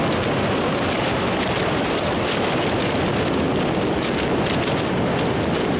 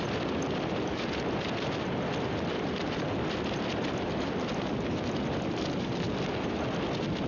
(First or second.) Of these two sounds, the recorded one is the first